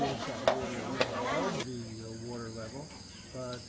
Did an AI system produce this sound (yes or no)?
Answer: no